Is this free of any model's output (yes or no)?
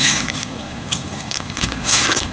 no